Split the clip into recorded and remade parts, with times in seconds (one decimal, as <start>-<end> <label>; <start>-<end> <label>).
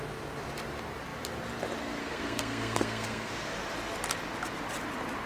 0.0-2.0 recorded; 2.0-3.3 remade; 3.3-5.3 recorded